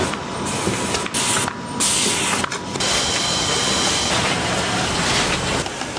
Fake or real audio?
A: real